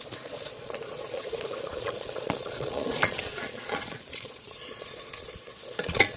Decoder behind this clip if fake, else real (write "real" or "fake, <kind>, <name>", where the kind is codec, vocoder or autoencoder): fake, vocoder, Vocos